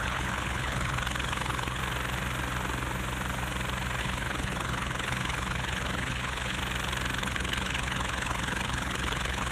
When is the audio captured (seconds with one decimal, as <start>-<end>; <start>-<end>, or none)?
1.8-4.0; 6.6-7.2